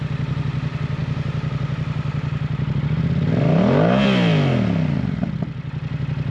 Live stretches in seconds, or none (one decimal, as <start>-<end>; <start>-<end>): 0.0-6.3